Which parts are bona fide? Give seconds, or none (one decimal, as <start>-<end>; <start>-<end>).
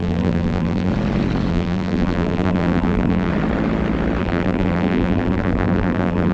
0.9-1.5; 3.3-4.2